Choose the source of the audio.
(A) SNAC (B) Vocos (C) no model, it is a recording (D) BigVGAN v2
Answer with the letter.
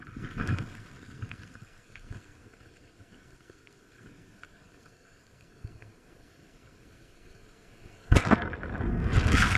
A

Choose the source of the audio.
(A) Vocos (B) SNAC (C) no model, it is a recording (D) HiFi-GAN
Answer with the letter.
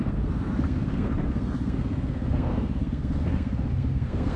B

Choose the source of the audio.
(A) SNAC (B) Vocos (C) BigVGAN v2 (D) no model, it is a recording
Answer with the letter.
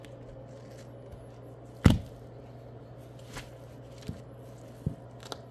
D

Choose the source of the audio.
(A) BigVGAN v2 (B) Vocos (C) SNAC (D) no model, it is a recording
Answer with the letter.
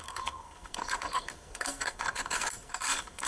C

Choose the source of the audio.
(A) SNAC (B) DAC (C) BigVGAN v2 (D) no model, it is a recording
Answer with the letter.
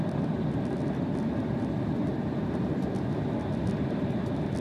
D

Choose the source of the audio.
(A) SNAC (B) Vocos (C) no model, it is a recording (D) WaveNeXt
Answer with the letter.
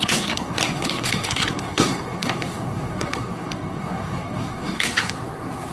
A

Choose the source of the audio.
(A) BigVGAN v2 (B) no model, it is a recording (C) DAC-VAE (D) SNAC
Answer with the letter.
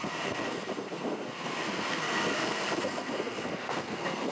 D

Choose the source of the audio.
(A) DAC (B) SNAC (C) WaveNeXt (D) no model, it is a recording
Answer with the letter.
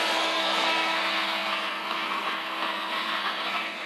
B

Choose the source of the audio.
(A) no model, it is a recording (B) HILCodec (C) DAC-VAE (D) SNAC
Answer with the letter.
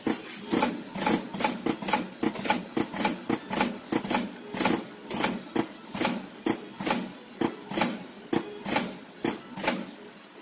A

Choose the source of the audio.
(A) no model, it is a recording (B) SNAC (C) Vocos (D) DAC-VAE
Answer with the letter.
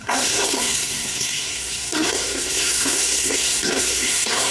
B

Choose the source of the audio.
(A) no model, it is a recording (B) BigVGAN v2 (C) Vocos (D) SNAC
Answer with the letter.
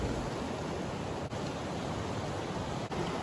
A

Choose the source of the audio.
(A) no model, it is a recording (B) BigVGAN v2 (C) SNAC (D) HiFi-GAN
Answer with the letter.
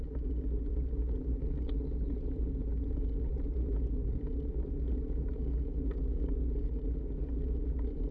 A